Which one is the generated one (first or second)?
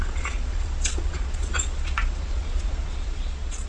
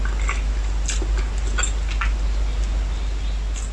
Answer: first